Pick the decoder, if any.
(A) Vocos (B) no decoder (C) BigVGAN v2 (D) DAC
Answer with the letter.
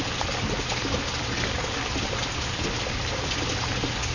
B